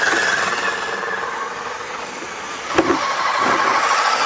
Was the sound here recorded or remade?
recorded